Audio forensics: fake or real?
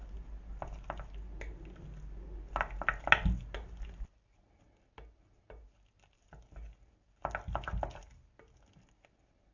real